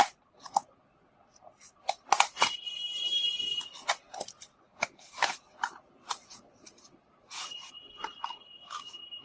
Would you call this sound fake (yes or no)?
no